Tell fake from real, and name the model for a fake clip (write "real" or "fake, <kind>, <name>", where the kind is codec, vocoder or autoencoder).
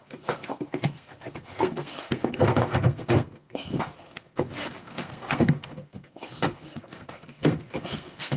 fake, codec, SNAC